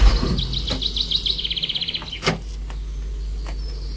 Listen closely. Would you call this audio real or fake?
real